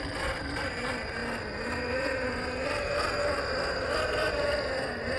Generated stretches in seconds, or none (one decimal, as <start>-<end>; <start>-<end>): none